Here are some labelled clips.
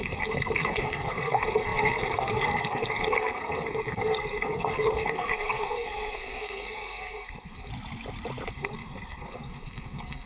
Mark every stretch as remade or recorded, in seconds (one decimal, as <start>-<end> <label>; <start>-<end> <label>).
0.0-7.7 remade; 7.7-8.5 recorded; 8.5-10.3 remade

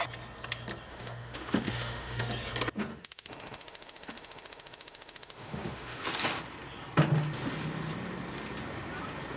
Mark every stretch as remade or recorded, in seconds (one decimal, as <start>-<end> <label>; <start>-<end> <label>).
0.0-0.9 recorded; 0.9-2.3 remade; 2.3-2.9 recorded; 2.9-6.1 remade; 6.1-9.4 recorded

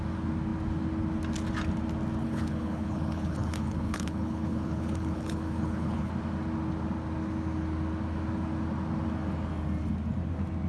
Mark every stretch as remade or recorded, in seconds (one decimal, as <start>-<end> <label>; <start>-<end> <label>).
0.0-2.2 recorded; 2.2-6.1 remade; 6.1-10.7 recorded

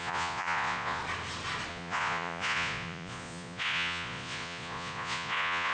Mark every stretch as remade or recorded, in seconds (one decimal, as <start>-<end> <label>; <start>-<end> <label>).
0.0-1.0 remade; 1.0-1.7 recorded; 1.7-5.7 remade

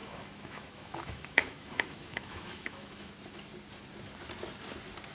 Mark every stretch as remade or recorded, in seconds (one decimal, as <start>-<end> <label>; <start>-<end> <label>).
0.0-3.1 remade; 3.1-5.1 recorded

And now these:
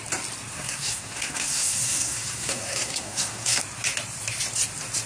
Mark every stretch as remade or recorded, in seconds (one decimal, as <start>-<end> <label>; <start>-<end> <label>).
0.0-0.5 recorded; 0.5-3.6 remade; 3.6-5.1 recorded